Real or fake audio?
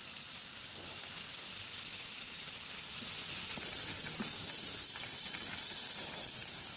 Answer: real